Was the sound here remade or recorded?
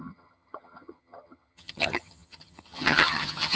remade